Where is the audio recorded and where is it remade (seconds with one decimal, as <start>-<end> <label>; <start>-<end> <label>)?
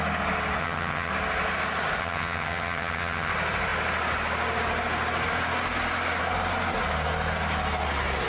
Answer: 0.0-0.6 recorded; 0.6-1.1 remade; 1.1-2.0 recorded; 2.0-3.3 remade; 3.3-8.3 recorded